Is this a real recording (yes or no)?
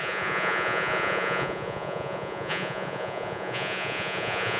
no